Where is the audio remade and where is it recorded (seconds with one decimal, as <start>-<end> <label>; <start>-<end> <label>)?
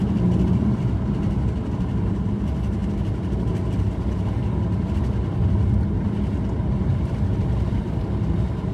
0.0-8.7 recorded